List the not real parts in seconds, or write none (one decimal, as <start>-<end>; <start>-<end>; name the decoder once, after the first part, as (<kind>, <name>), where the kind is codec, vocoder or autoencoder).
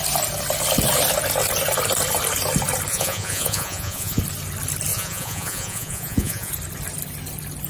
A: 2.9-4.2 (vocoder, Vocos); 4.9-6.5